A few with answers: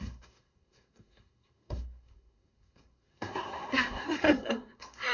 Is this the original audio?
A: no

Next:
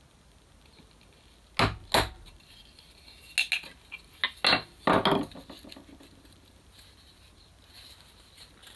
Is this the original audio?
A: yes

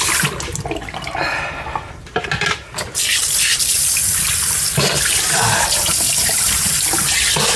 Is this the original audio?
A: yes